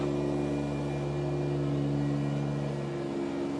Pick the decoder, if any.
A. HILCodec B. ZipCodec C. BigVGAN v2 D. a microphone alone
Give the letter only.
D